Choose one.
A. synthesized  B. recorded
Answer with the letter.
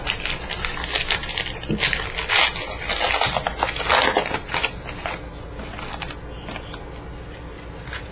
B